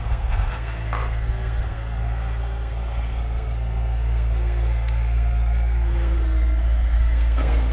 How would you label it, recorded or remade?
remade